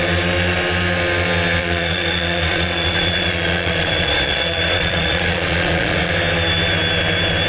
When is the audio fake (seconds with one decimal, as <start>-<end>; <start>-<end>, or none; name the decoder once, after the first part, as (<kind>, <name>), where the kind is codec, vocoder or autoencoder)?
1.6-6.1 (vocoder, Vocos)